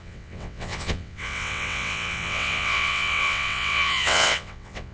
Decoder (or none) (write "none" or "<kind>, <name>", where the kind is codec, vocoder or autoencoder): vocoder, WaveNeXt